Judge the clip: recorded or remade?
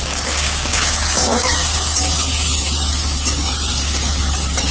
remade